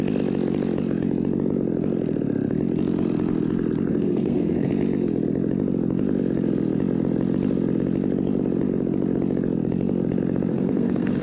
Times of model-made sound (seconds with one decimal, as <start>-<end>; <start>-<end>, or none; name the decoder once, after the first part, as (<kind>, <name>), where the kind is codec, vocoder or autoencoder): 3.9-4.7 (codec, SNAC); 10.5-11.2